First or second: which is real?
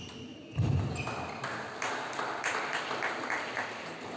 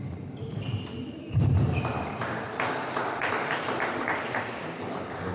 first